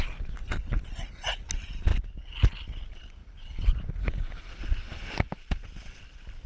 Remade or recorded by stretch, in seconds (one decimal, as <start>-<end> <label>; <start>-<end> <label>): 0.0-6.5 recorded